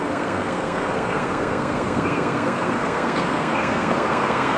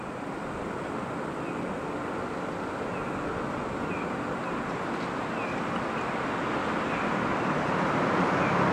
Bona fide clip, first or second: second